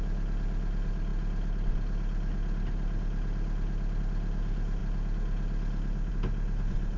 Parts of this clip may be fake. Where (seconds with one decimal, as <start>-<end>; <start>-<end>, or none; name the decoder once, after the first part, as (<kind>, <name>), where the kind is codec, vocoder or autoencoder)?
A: none